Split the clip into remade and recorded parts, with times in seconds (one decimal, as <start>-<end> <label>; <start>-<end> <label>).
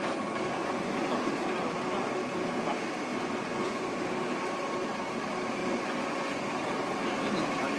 0.0-0.6 recorded; 0.6-1.1 remade; 1.1-3.1 recorded; 3.1-3.9 remade; 3.9-5.6 recorded; 5.6-6.5 remade; 6.5-7.8 recorded